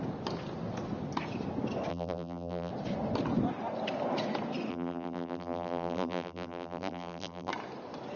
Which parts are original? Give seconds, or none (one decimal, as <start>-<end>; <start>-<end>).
0.0-1.9; 2.7-4.7; 7.5-8.2